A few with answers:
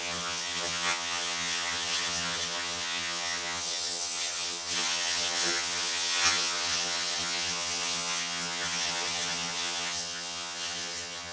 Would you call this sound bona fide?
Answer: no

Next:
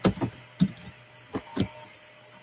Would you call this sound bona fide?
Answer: yes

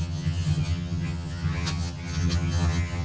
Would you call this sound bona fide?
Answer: no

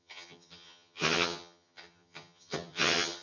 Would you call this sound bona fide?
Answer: no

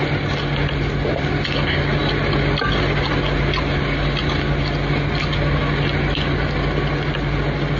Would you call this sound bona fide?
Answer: yes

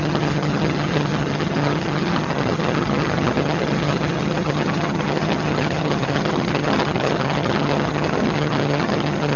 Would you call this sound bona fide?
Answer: no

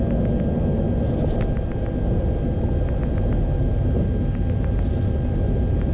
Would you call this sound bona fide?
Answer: yes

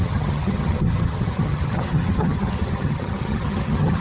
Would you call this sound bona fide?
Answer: no